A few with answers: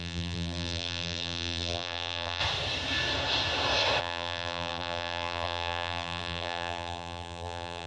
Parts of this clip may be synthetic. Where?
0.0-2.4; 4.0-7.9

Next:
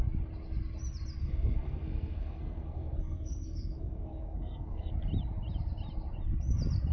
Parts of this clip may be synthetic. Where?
1.2-4.9

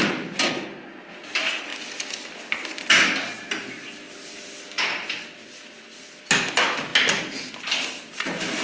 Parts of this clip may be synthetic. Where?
none

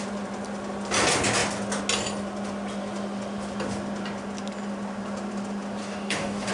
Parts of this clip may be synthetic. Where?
5.8-6.5

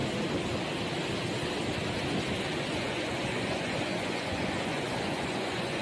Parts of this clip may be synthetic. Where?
2.6-5.8